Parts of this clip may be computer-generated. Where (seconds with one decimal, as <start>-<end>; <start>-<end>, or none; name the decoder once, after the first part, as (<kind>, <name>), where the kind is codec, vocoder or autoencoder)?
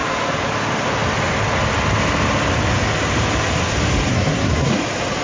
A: 4.1-4.7 (codec, SNAC)